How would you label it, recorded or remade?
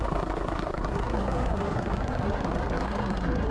remade